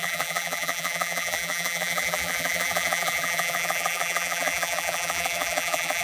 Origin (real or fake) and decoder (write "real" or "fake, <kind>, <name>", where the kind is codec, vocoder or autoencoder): fake, vocoder, BigVGAN v2